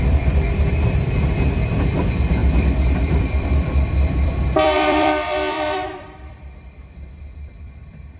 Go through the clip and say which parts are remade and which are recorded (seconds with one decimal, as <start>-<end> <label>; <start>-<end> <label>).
0.0-8.2 remade